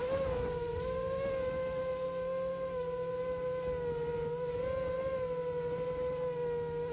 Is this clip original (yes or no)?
yes